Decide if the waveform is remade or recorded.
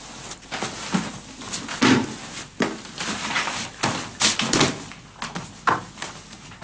recorded